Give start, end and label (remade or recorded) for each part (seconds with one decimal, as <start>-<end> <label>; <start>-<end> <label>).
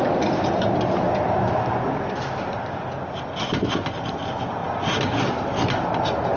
0.0-6.4 recorded